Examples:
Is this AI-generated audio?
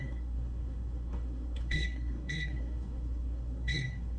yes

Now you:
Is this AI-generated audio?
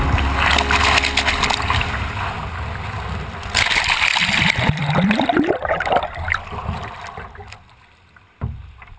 no